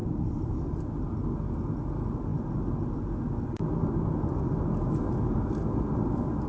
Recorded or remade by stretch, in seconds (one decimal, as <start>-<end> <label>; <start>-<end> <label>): 0.0-6.5 recorded